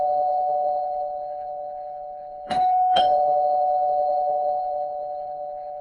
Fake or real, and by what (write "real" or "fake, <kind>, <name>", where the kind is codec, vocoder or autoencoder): fake, codec, HILCodec